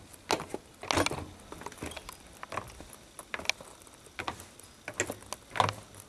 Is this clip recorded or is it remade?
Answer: recorded